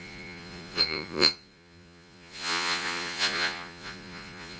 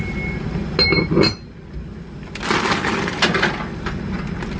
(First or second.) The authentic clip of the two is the second